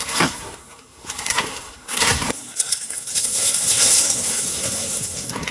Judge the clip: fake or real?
fake